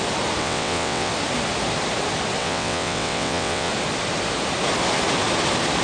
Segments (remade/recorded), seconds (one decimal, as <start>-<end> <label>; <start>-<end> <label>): 0.0-0.4 recorded; 0.4-1.1 remade; 1.1-2.4 recorded; 2.4-3.7 remade; 3.7-5.8 recorded